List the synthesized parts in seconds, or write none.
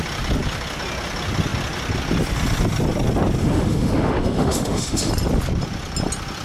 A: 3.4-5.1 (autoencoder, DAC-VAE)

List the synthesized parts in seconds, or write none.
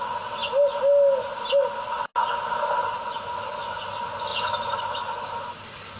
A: 4.3-4.8 (vocoder, BigVGAN v2)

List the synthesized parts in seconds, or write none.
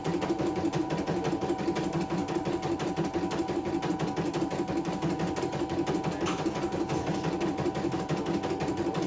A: none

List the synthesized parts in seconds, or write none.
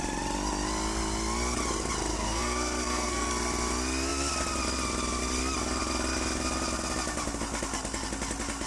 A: 2.1-3.3 (codec, SNAC)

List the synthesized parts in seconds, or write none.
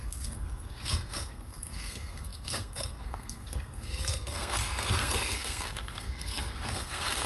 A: 0.0-7.3 (codec, SNAC)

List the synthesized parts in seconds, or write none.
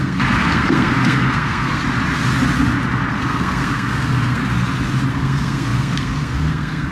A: 0.0-1.8 (codec, SNAC); 3.1-4.4; 5.1-6.9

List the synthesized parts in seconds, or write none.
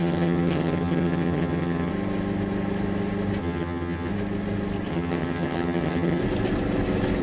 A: 0.0-1.9 (vocoder, HiFi-GAN); 3.4-4.1; 4.9-6.2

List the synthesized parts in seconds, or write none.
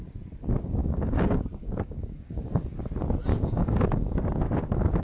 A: 0.8-2.7 (codec, DAC); 3.3-4.2